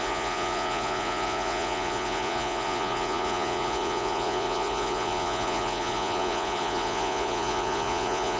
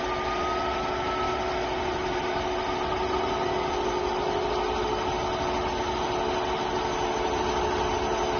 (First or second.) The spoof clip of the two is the first